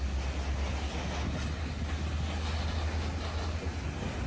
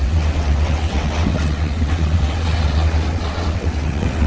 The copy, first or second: second